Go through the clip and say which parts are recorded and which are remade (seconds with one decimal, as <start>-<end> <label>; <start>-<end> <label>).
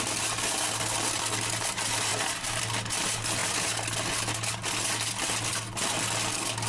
0.0-6.7 recorded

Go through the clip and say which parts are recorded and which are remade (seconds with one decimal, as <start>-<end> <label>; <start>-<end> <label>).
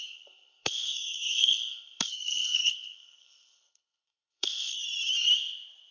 0.0-4.8 remade; 4.8-5.9 recorded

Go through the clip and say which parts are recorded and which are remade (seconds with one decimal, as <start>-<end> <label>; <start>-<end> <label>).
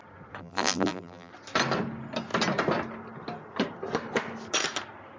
0.0-0.4 recorded; 0.4-1.3 remade; 1.3-5.2 recorded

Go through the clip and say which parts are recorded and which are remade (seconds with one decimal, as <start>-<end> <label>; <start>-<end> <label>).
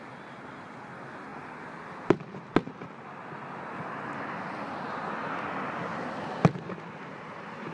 0.0-7.7 recorded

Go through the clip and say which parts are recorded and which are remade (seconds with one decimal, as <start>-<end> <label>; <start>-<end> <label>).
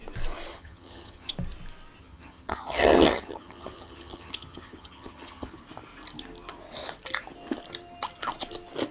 0.0-0.5 recorded; 0.5-1.3 remade; 1.3-2.0 recorded; 2.0-5.6 remade; 5.6-8.9 recorded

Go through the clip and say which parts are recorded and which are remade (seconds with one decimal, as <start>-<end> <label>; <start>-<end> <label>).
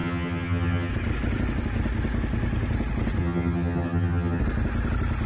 0.0-0.9 remade; 0.9-3.2 recorded; 3.2-4.4 remade; 4.4-5.3 recorded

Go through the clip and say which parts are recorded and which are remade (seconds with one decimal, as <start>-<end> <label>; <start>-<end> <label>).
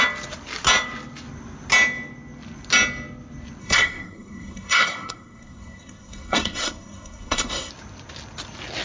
0.0-3.6 recorded; 3.6-7.7 remade; 7.7-8.8 recorded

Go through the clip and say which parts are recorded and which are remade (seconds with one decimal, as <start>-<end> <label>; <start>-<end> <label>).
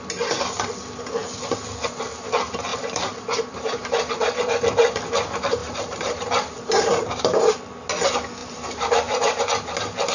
0.0-2.7 recorded; 2.7-3.9 remade; 3.9-5.6 recorded; 5.6-7.5 remade; 7.5-8.4 recorded; 8.4-9.4 remade; 9.4-10.1 recorded